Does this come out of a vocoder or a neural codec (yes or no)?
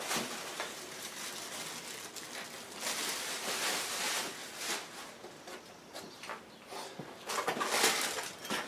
no